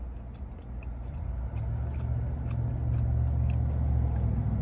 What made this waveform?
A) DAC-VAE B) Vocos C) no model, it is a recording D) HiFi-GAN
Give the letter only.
C